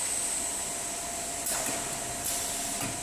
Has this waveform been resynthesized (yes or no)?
no